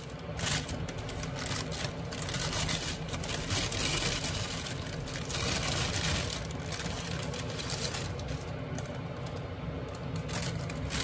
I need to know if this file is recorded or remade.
recorded